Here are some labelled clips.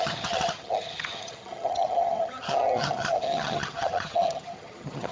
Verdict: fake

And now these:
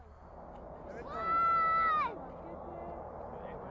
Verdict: real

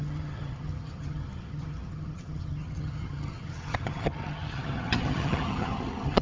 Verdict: fake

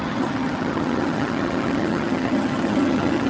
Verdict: fake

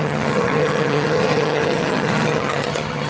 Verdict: fake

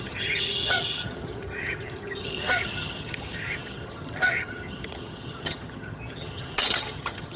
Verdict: fake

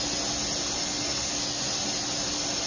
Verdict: real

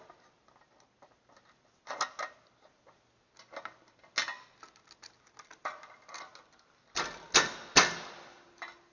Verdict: real